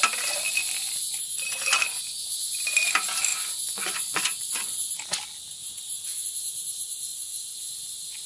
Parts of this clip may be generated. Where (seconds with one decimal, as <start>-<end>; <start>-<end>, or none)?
3.3-4.9; 5.6-6.3; 7.1-7.8

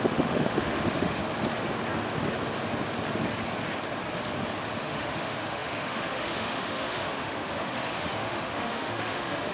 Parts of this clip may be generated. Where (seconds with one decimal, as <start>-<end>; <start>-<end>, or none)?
0.0-1.2; 4.8-9.5

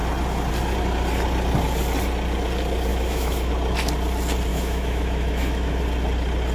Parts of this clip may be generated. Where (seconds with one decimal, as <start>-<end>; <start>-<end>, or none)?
2.9-3.5; 4.5-5.8

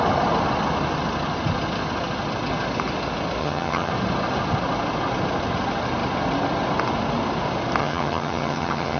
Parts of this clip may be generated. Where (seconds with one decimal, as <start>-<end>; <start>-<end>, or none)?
3.4-3.9; 7.8-9.0

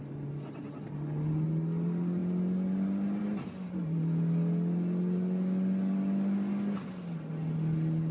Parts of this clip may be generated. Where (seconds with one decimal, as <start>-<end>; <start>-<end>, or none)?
none